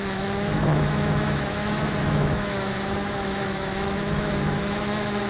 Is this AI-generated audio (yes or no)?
yes